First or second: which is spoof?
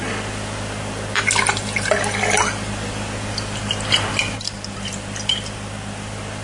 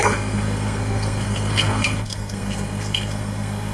second